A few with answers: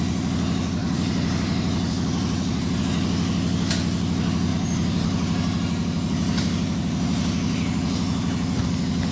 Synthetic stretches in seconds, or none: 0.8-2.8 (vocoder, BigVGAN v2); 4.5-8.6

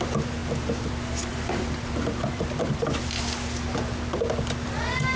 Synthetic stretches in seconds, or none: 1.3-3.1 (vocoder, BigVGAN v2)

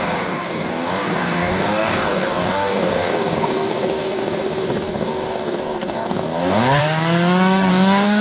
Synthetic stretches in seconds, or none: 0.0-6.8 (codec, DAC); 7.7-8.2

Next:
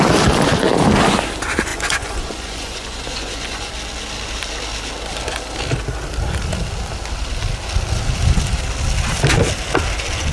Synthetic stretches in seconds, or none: 1.7-3.7 (vocoder, Vocos)

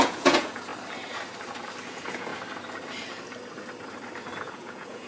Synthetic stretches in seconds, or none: 0.0-0.7 (vocoder, Vocos); 1.9-2.3; 4.4-5.1

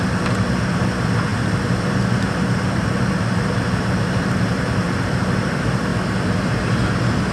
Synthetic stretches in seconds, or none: 0.0-5.9 (vocoder, BigVGAN v2)

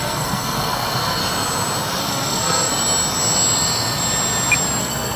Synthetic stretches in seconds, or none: 0.0-1.2 (codec, SNAC); 2.0-2.7; 4.8-5.2

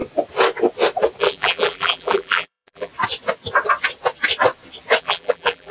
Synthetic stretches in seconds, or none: 1.2-2.9 (vocoder, BigVGAN v2); 5.0-5.7